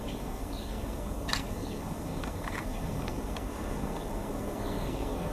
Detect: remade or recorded remade